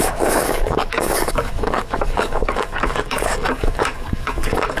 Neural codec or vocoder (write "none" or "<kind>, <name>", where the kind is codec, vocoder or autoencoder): codec, DAC